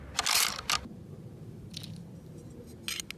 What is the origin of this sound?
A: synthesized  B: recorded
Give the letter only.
B